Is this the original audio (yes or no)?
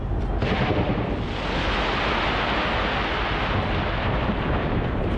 yes